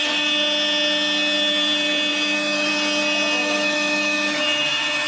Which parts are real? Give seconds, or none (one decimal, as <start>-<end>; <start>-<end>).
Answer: 0.0-2.1; 2.7-3.4